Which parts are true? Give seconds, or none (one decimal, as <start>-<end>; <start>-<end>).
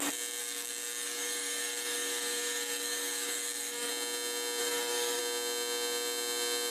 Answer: 0.0-0.4; 3.9-4.6; 5.2-6.7